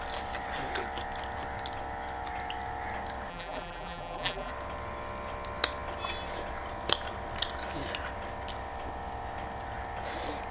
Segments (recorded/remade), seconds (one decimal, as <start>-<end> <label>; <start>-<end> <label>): 0.0-3.3 recorded; 3.3-4.5 remade; 4.5-10.5 recorded